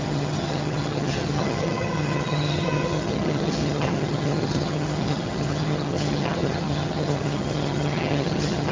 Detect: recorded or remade remade